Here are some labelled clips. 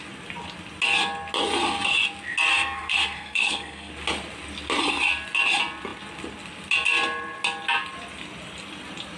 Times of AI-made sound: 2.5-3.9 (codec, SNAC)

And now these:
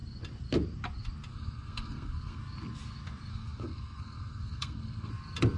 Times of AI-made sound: 1.3-2.4 (codec, SNAC); 3.3-5.1

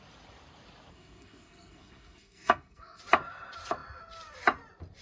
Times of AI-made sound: 0.9-3.0 (codec, SNAC)

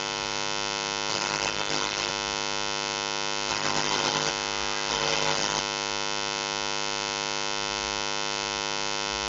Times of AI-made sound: 1.1-2.1 (codec, SNAC); 3.5-4.3; 4.9-5.6

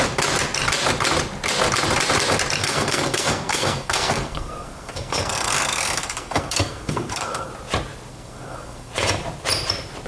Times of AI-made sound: 2.6-7.5 (codec, SNAC); 8.1-8.9